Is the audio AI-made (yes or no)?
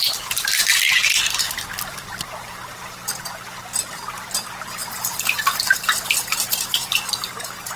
no